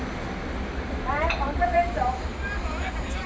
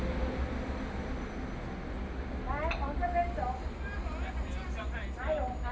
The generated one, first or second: first